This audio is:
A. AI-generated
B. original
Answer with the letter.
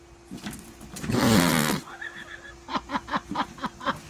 B